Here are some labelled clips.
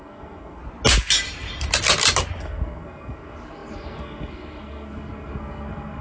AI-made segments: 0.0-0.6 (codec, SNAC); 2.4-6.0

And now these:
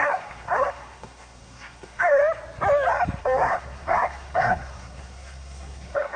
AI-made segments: 0.0-2.2 (codec, SNAC); 3.2-6.2

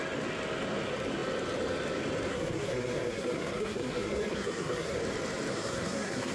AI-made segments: 2.3-5.0 (codec, SNAC); 5.5-6.3

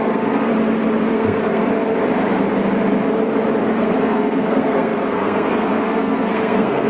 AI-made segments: 0.0-0.5 (codec, SNAC); 1.1-1.7; 3.8-6.9

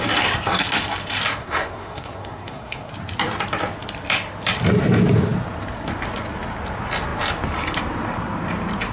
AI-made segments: 1.4-2.9 (codec, SNAC)